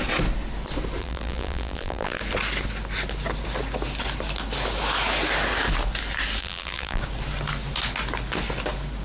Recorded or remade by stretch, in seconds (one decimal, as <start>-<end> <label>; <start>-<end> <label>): 0.0-1.0 recorded; 1.0-2.2 remade; 2.2-6.4 recorded; 6.4-7.0 remade; 7.0-9.0 recorded